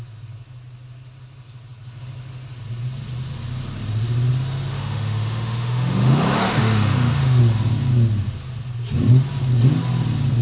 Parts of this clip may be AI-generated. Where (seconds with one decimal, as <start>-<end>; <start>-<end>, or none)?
4.7-7.4